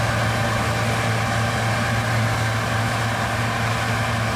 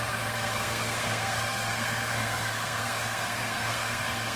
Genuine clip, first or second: first